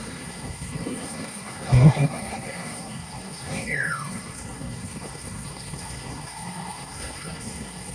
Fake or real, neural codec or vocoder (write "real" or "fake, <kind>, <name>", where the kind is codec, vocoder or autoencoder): fake, codec, SNAC